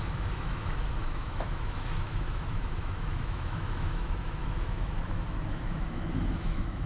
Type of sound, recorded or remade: remade